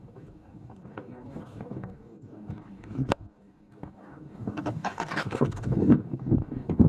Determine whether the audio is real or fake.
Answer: fake